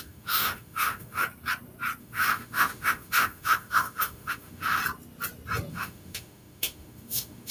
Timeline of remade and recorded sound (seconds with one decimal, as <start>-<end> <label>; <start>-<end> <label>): 0.0-1.2 remade; 1.2-2.0 recorded; 2.0-4.8 remade; 4.8-5.7 recorded; 5.7-7.5 remade

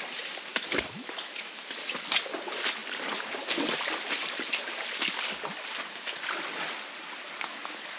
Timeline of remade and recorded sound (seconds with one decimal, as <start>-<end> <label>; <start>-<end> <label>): 0.0-0.5 recorded; 0.5-1.6 remade; 1.6-8.0 recorded

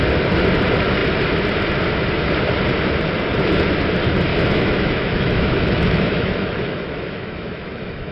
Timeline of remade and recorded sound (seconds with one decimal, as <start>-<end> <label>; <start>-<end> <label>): 0.0-4.3 recorded; 4.3-8.1 remade

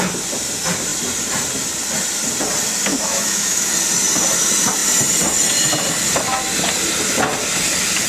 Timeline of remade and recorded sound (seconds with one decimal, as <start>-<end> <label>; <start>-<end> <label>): 0.0-2.9 recorded; 2.9-3.7 remade; 3.7-8.1 recorded